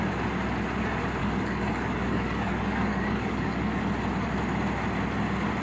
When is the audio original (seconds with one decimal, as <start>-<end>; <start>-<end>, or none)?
0.0-1.2; 3.8-5.6